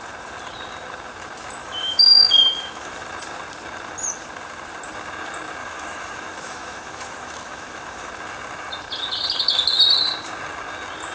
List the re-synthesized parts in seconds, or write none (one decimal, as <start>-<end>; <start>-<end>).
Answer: 1.6-2.9; 5.6-8.1